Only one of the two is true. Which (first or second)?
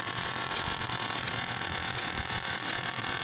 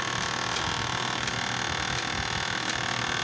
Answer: second